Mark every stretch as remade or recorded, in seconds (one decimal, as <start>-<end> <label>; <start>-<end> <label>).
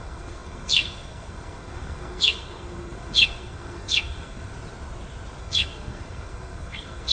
0.0-4.5 remade; 4.5-5.4 recorded; 5.4-7.1 remade